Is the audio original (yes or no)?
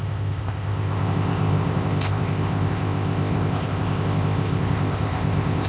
no